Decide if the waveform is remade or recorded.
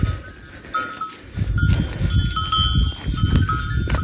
recorded